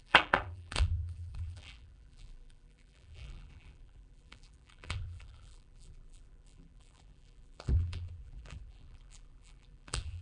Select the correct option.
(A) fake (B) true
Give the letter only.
A